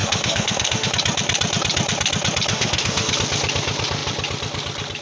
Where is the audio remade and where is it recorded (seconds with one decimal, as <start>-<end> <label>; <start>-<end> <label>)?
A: 0.0-0.9 remade; 0.9-2.5 recorded; 2.5-3.1 remade; 3.1-5.0 recorded